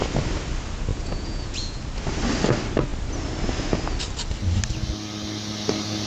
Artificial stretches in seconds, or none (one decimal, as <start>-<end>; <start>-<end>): 0.9-1.8